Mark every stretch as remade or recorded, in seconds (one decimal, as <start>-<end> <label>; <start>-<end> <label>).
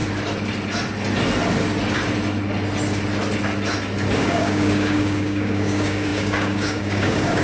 0.0-4.2 recorded; 4.2-7.4 remade